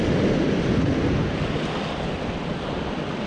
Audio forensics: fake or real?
real